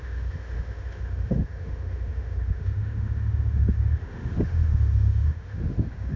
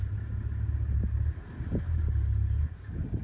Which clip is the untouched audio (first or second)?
second